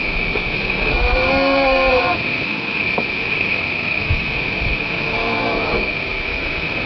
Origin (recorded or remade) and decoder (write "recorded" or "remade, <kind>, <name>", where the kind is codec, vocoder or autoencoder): remade, codec, SNAC